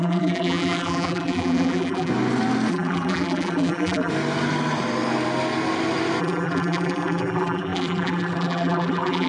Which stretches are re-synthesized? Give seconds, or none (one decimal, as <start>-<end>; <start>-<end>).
0.0-2.1; 2.7-4.1; 6.2-9.3